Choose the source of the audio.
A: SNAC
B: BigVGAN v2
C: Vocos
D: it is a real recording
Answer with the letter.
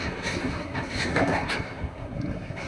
A